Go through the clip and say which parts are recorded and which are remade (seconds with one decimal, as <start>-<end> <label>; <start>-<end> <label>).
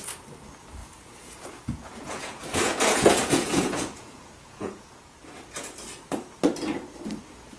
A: 0.0-0.8 recorded; 0.8-5.2 remade; 5.2-7.6 recorded